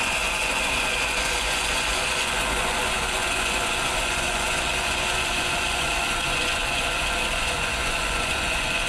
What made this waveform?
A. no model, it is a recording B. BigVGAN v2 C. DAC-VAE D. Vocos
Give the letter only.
D